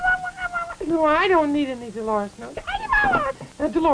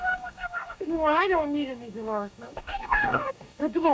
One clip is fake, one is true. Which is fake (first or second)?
second